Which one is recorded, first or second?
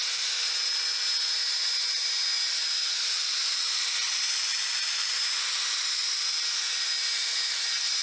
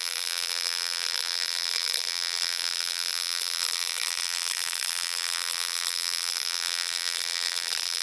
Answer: first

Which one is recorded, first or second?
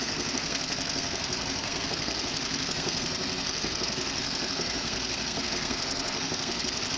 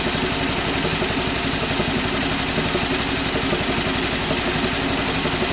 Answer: second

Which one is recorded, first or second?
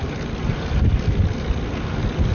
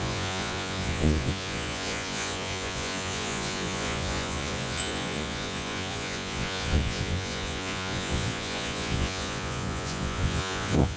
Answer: first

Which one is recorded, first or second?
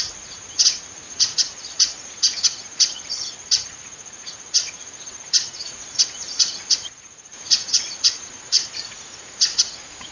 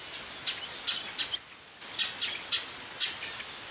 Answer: second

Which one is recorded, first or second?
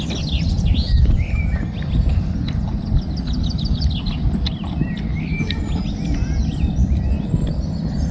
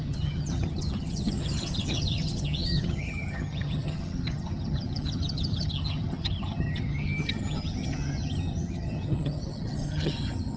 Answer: first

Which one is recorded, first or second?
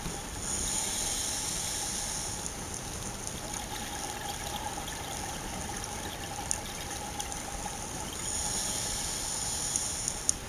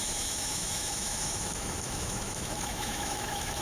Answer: first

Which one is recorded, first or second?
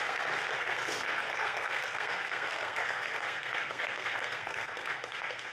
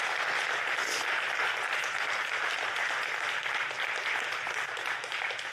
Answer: second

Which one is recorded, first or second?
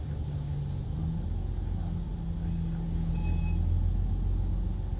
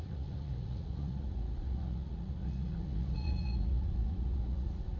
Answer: first